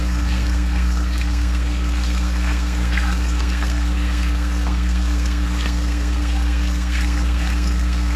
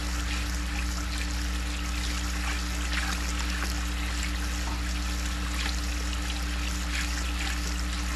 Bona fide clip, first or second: second